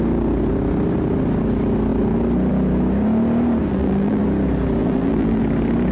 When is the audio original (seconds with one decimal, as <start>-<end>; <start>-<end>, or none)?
0.0-3.7; 4.2-4.8; 5.4-5.9